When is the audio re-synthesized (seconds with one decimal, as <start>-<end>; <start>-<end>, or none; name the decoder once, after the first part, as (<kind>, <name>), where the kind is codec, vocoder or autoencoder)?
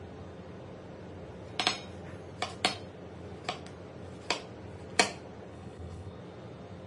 5.5-6.2 (codec, HILCodec)